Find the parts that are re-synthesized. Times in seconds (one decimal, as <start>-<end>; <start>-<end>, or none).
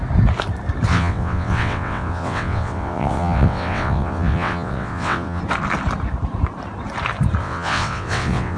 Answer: 0.9-5.4; 7.4-8.6